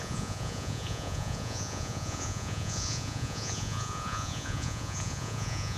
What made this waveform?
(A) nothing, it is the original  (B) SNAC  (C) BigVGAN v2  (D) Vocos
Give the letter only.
D